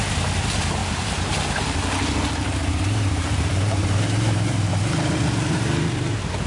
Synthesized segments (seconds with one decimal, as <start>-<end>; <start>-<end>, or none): 0.8-4.7